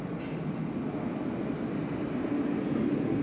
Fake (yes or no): no